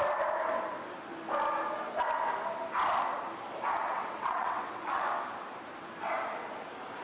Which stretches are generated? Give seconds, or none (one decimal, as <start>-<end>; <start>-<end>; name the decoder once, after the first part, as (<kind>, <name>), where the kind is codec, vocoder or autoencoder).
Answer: 3.8-5.0 (vocoder, WaveNeXt)